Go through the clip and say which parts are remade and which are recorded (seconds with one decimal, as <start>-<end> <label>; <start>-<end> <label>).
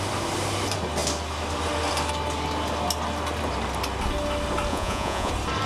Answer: 0.0-4.7 recorded; 4.7-5.3 remade; 5.3-5.7 recorded